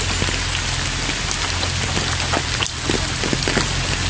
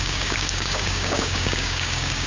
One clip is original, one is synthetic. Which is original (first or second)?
first